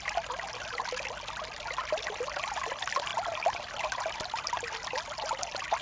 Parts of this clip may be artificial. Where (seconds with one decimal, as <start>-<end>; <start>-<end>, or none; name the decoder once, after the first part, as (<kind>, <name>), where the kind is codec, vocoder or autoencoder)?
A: none